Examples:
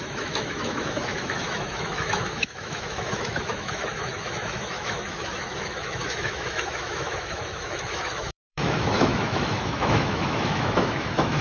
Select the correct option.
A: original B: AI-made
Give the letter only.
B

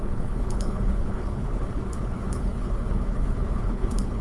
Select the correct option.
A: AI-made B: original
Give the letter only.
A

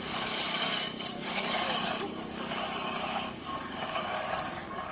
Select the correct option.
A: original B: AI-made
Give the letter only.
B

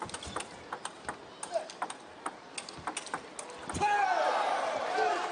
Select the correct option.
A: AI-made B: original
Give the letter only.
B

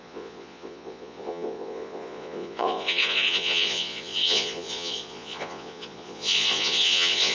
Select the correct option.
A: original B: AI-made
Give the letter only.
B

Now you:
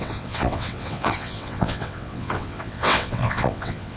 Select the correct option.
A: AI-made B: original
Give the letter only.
A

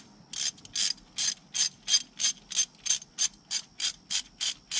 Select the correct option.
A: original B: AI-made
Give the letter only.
A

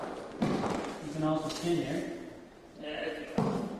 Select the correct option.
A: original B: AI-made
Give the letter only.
A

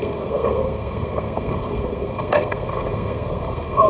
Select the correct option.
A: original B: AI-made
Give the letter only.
B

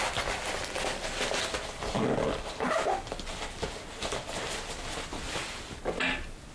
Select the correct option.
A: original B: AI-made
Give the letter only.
A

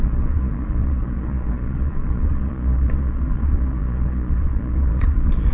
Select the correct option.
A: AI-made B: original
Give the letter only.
A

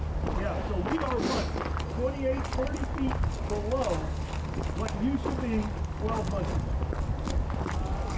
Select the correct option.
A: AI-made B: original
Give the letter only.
B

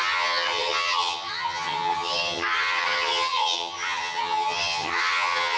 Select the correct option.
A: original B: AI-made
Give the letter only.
B